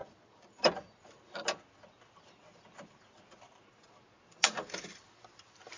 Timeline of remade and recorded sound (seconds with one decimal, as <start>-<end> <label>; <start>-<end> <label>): 0.0-0.6 remade; 0.6-4.4 recorded; 4.4-5.3 remade; 5.3-5.8 recorded